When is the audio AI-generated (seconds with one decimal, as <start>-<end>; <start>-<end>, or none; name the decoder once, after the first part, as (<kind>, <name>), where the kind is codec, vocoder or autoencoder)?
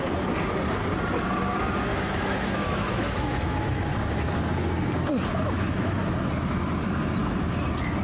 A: 1.9-3.8 (autoencoder, DAC-VAE); 5.3-6.0